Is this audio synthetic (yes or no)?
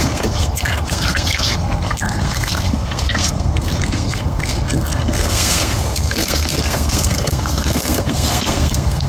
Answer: yes